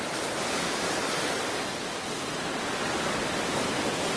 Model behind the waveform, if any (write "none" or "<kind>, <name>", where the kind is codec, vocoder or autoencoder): none